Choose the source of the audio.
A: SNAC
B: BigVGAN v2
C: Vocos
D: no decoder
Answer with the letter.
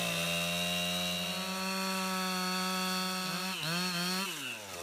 D